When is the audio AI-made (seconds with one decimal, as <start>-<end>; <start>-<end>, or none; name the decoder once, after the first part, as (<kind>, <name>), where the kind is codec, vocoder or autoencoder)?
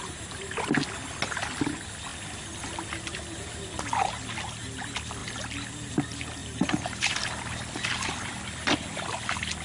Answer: 6.4-7.2 (vocoder, BigVGAN v2)